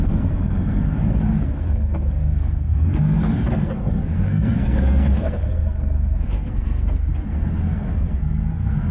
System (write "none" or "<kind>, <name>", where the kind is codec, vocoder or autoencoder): codec, SNAC